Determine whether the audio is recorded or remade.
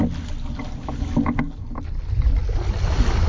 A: recorded